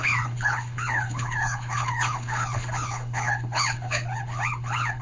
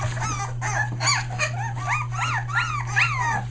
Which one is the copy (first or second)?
first